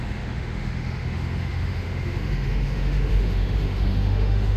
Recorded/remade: remade